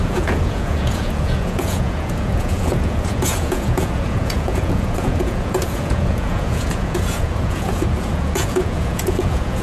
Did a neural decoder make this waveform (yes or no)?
yes